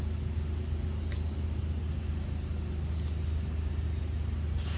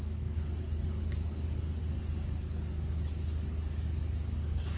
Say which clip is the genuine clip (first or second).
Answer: first